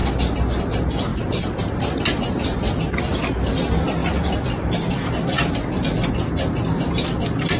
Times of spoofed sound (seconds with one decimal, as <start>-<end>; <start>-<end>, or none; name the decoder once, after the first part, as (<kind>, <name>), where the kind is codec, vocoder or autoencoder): 4.0-5.5 (vocoder, BigVGAN v2)